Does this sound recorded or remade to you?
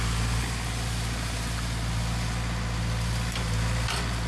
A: recorded